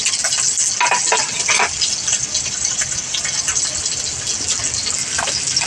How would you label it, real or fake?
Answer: real